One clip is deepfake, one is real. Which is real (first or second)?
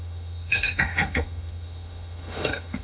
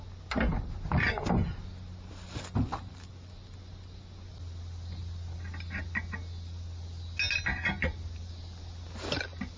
second